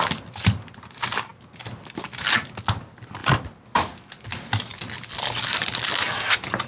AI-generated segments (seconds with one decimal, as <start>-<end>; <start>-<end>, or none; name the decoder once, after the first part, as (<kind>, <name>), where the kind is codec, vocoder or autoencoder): none